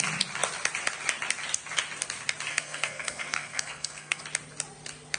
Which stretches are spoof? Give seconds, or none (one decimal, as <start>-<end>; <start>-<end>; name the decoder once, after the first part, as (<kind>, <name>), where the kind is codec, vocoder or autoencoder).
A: 2.5-4.2 (codec, SNAC)